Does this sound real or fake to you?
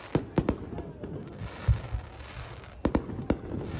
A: real